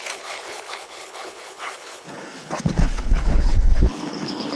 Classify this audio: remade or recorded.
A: remade